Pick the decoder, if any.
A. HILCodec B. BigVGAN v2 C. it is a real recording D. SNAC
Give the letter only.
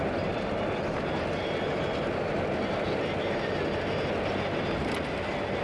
C